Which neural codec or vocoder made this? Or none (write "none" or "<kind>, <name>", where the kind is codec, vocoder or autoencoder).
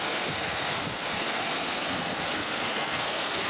codec, SNAC